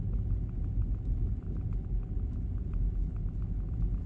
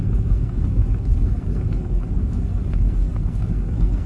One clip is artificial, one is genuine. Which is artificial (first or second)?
second